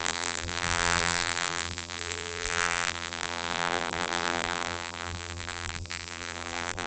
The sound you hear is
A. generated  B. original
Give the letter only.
A